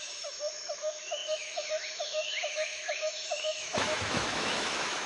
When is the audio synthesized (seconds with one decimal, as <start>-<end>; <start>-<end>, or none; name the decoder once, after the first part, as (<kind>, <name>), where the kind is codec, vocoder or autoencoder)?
0.0-5.1 (autoencoder, DAC-VAE)